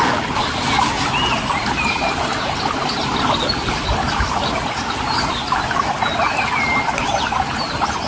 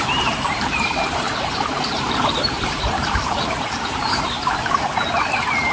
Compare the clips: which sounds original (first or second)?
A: first